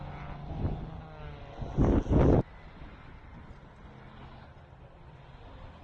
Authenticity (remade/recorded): recorded